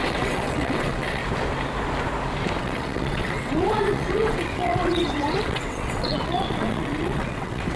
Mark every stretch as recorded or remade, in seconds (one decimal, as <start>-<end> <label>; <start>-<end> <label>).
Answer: 0.0-1.2 remade; 1.2-2.6 recorded; 2.6-7.8 remade